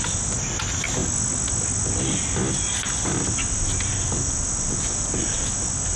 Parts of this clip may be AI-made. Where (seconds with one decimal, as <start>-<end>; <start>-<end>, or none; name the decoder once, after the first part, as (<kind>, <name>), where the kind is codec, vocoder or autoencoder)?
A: none